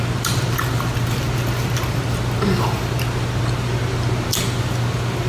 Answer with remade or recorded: recorded